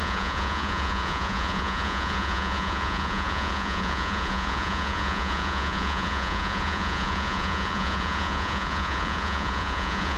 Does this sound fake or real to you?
fake